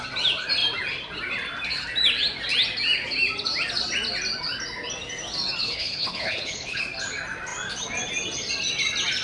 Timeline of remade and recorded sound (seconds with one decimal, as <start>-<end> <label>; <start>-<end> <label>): 0.0-5.6 recorded; 5.6-6.8 remade; 6.8-9.2 recorded